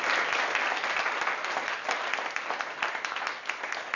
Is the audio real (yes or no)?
yes